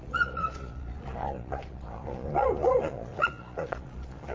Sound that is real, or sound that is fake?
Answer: fake